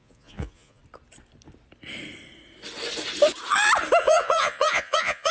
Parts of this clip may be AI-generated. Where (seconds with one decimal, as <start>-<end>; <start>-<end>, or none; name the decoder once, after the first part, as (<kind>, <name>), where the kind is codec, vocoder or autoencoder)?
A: 0.0-0.8 (vocoder, Vocos); 4.0-5.3